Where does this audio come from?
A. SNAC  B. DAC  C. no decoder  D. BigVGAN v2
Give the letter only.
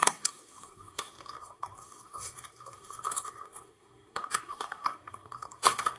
A